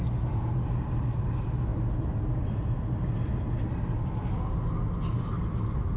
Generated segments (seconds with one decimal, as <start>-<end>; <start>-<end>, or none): none